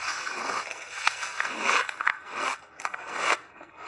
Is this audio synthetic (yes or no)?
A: yes